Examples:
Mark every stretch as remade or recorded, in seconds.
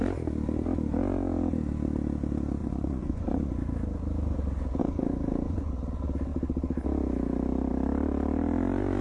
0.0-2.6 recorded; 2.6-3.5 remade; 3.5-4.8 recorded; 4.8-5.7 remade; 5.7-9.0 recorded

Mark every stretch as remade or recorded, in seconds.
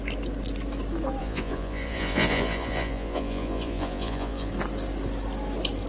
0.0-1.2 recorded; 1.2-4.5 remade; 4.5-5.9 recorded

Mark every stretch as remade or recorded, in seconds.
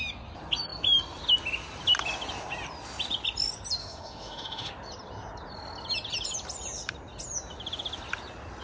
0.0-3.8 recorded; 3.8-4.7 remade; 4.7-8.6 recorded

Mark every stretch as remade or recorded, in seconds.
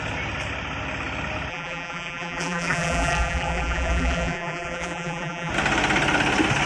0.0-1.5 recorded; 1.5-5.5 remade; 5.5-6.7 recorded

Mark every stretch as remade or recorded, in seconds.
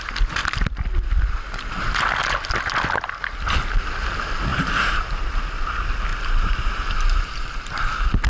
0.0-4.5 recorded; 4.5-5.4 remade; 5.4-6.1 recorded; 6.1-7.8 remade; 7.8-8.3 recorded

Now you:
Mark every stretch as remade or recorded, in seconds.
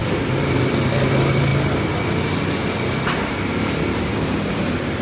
0.0-0.9 recorded; 0.9-1.5 remade; 1.5-3.1 recorded; 3.1-5.0 remade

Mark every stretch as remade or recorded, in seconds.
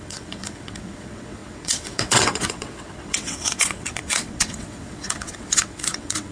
0.0-6.3 remade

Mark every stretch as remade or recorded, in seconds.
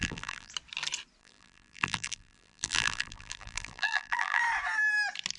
0.0-0.5 remade; 0.5-1.2 recorded; 1.2-4.4 remade; 4.4-5.4 recorded